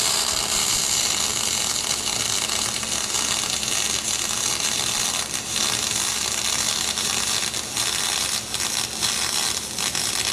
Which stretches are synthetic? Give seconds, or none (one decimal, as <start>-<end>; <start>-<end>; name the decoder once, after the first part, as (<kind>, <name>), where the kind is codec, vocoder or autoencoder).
0.0-0.8 (vocoder, BigVGAN v2); 4.5-10.3